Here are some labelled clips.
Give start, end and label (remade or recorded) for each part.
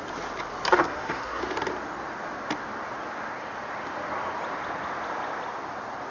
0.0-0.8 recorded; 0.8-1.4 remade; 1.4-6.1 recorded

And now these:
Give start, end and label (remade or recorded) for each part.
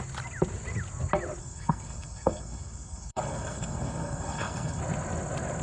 0.0-1.4 recorded; 1.4-4.8 remade; 4.8-5.6 recorded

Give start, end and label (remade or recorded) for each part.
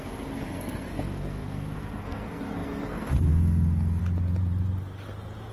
0.0-4.0 remade; 4.0-5.5 recorded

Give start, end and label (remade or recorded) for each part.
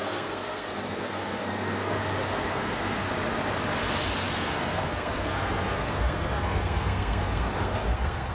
0.0-2.0 remade; 2.0-2.5 recorded; 2.5-3.0 remade; 3.0-4.3 recorded; 4.3-8.3 remade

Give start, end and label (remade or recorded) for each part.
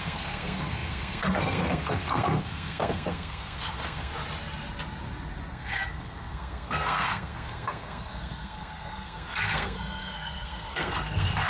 0.0-4.1 remade; 4.1-5.5 recorded; 5.5-11.5 remade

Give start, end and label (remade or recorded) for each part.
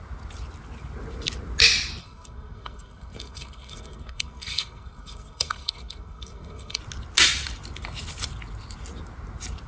0.0-2.0 recorded; 2.0-6.8 remade; 6.8-9.7 recorded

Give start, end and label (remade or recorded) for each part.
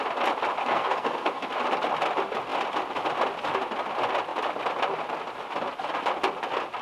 0.0-0.6 recorded; 0.6-1.5 remade; 1.5-6.8 recorded